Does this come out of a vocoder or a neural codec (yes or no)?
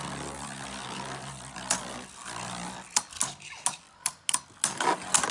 no